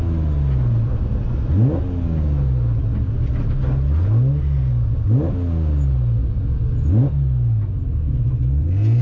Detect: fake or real real